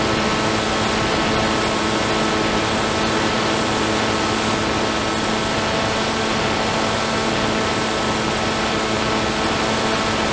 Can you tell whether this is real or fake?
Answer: real